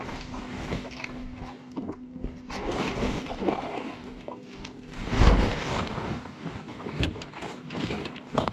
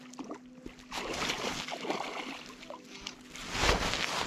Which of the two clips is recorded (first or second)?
second